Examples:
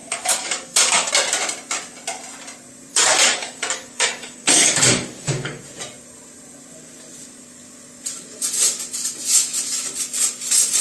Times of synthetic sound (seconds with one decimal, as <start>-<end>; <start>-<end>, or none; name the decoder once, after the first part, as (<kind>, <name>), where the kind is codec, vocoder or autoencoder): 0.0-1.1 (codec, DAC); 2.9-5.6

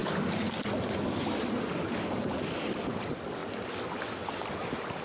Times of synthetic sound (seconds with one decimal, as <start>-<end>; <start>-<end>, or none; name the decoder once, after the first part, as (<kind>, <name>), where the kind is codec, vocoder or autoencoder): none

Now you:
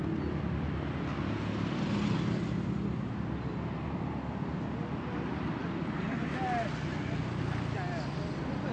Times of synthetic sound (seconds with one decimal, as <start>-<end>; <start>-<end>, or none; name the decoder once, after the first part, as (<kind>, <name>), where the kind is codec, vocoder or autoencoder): none

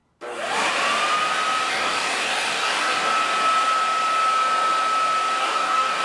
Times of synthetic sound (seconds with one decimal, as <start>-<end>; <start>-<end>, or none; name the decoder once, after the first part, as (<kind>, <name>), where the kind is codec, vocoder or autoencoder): 1.7-3.1 (codec, DAC); 5.4-6.0

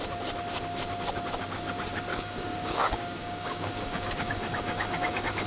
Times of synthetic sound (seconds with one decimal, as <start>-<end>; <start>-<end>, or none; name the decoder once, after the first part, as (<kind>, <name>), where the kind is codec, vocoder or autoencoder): 2.1-5.5 (codec, DAC)

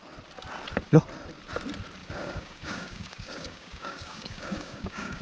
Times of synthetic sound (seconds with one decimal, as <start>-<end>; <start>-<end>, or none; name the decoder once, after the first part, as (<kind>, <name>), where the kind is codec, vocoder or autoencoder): 2.0-5.2 (codec, DAC)

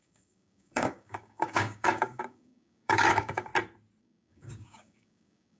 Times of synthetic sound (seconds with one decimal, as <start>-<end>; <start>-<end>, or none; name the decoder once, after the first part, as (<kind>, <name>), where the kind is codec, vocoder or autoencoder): 0.0-3.5 (codec, DAC); 4.0-5.6